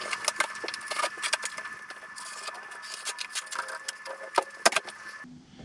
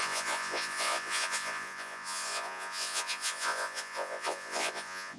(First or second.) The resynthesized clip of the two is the second